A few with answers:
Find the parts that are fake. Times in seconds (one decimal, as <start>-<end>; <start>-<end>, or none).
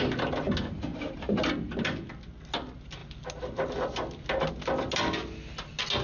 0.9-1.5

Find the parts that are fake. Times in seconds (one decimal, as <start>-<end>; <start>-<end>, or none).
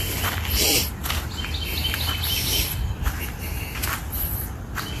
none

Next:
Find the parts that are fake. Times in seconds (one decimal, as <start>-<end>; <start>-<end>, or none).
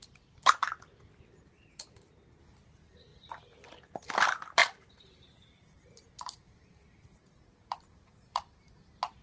3.1-4.1; 4.6-8.7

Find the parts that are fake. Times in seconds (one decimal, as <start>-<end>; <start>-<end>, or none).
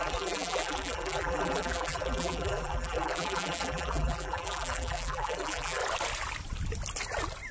0.0-5.8